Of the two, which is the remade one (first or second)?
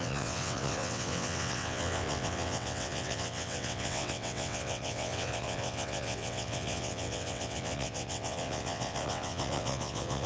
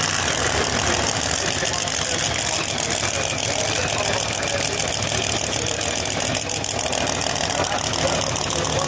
first